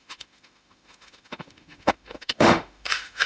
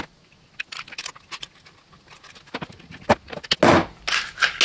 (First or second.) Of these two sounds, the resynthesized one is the first